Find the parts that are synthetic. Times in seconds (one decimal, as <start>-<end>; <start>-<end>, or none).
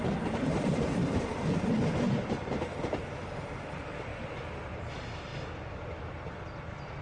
0.0-4.1; 4.6-5.3